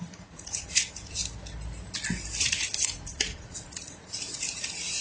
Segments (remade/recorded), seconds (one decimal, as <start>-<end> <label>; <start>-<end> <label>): 0.0-1.2 remade; 1.2-2.4 recorded; 2.4-5.0 remade